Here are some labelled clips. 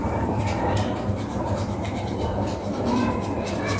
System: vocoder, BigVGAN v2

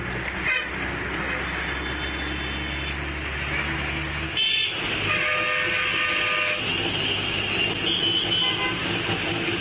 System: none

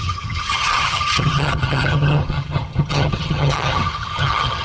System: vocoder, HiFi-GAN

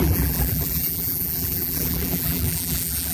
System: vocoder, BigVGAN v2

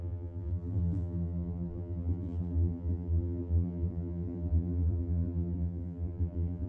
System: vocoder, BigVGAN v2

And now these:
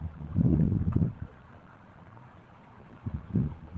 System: vocoder, Vocos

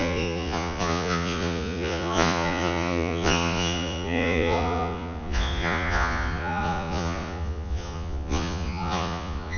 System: vocoder, Vocos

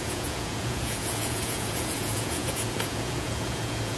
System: vocoder, Vocos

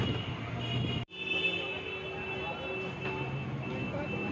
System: none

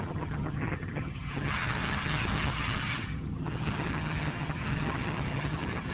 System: vocoder, HiFi-GAN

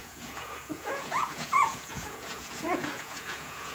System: vocoder, Vocos